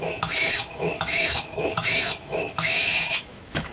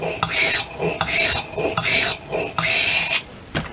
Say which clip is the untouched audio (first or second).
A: second